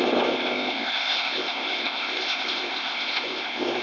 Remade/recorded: remade